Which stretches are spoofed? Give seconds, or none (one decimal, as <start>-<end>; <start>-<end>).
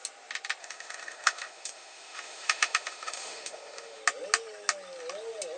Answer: 0.6-4.0